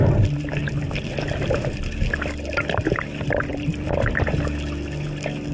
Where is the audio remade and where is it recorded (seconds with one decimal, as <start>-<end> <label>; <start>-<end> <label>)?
0.0-0.6 recorded; 0.6-1.1 remade; 1.1-3.5 recorded; 3.5-4.4 remade; 4.4-5.5 recorded